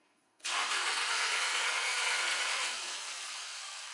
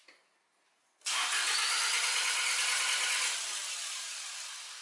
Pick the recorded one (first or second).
second